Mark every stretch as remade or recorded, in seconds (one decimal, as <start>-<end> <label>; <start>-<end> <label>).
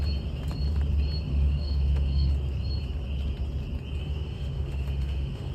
0.0-1.3 recorded; 1.3-2.3 remade; 2.3-4.0 recorded; 4.0-5.5 remade